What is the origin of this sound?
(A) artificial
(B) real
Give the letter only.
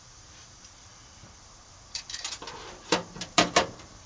A